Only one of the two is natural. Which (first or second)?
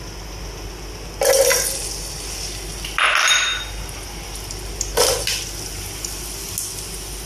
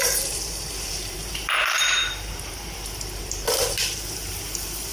first